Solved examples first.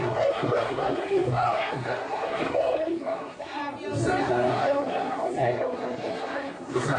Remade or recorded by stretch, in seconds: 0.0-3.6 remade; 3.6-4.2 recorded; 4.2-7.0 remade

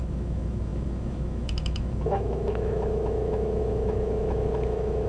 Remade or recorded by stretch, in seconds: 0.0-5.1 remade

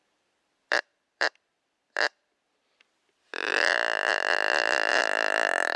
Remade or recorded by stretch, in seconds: 0.0-1.3 remade; 1.3-4.9 recorded; 4.9-5.8 remade

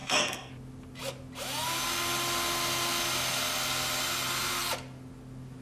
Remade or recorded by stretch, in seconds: 0.0-0.5 remade; 0.5-5.6 recorded

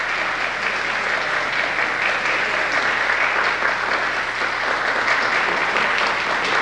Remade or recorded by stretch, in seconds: 0.0-6.6 recorded

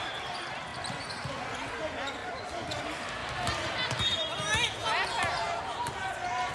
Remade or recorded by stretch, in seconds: 0.0-0.7 recorded; 0.7-1.3 remade; 1.3-2.2 recorded; 2.2-2.8 remade; 2.8-6.5 recorded

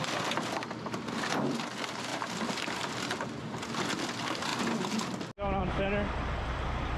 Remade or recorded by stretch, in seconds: 0.0-7.0 recorded

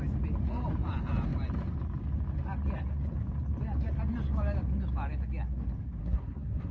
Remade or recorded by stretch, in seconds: 0.0-6.0 recorded; 6.0-6.7 remade